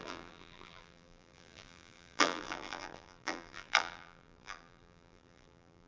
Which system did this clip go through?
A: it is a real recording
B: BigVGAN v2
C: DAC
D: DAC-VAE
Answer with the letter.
B